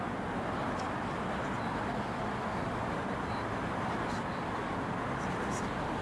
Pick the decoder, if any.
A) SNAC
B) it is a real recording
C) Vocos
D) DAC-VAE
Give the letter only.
B